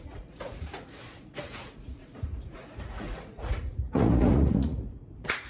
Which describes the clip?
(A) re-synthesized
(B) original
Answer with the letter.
A